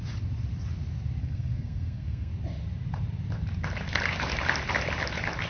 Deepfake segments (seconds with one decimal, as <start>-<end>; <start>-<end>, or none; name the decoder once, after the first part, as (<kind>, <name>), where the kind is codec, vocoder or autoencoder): 1.2-2.3 (codec, SNAC)